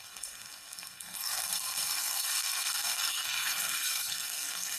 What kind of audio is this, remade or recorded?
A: remade